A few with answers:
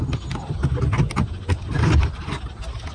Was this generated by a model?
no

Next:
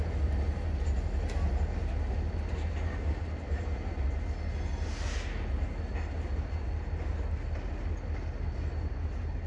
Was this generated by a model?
no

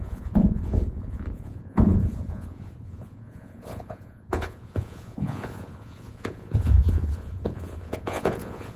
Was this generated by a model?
yes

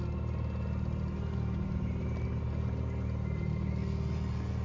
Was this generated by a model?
no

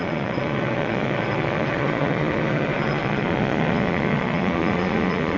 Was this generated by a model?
yes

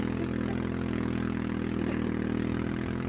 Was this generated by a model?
no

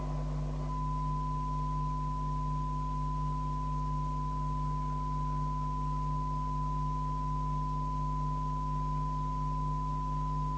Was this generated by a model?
no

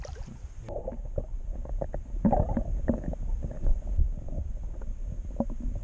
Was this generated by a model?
no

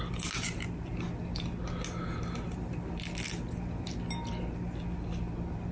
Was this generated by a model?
no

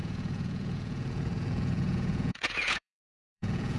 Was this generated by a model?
yes